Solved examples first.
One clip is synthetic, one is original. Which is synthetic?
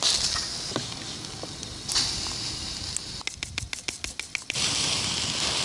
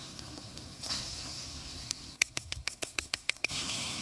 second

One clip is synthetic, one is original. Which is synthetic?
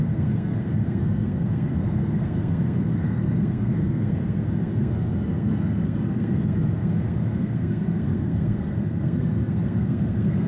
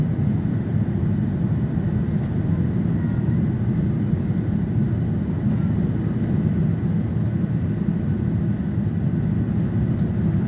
first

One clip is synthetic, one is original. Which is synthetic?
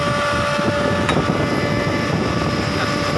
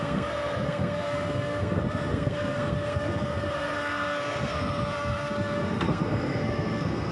second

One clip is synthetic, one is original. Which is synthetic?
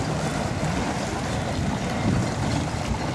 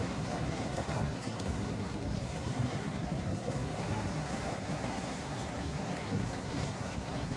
second